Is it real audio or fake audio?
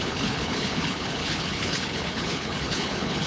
fake